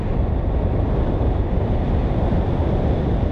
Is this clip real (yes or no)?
yes